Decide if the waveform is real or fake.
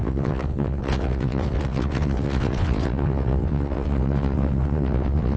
fake